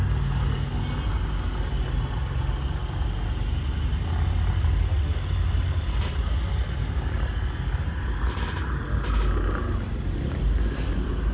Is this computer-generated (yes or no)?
no